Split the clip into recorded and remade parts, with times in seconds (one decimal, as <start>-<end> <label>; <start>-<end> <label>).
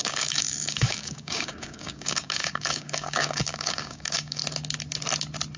0.0-4.4 remade; 4.4-5.6 recorded